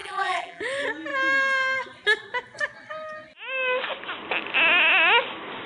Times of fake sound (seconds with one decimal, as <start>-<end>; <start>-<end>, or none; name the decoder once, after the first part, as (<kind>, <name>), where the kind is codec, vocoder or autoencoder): 0.0-0.6 (vocoder, BigVGAN v2)